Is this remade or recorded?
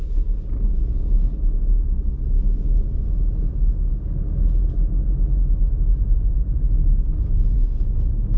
recorded